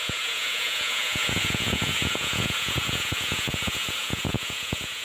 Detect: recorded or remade remade